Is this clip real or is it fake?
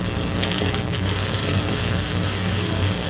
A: fake